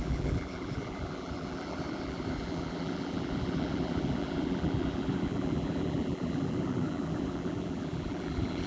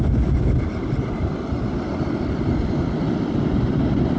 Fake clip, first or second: first